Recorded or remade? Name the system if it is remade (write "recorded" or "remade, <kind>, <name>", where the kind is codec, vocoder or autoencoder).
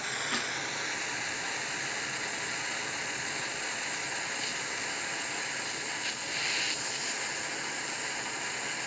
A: recorded